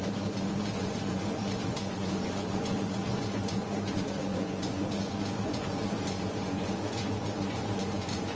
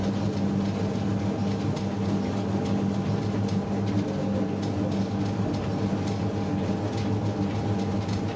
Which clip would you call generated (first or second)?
first